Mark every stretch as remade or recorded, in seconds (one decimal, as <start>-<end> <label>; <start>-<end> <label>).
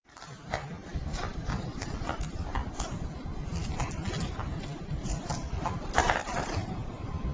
0.0-7.3 recorded